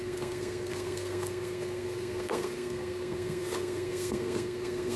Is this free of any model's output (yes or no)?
no